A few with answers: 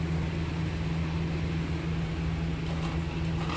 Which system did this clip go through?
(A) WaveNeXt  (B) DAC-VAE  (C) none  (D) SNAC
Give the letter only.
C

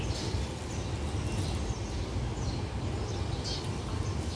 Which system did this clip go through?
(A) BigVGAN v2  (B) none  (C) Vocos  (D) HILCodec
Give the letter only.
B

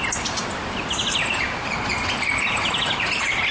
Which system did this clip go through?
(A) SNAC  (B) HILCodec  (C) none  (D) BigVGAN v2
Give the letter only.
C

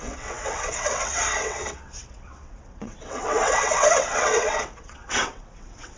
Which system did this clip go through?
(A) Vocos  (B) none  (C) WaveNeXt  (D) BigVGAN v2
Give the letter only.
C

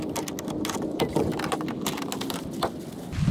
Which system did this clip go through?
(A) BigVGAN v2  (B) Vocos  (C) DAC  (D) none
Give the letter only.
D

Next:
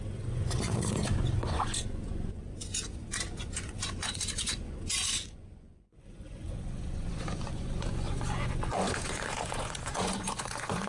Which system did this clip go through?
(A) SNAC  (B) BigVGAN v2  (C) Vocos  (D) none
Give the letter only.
C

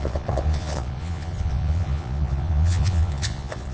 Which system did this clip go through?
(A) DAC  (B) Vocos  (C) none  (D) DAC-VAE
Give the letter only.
B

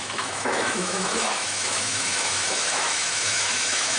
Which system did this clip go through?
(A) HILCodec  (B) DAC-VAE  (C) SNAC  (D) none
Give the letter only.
B